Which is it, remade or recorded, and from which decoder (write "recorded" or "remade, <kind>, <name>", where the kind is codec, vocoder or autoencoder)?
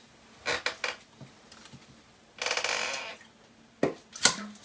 recorded